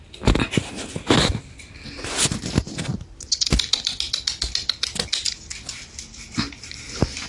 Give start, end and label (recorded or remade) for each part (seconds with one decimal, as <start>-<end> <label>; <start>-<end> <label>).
0.0-2.9 recorded; 2.9-3.9 remade; 3.9-7.3 recorded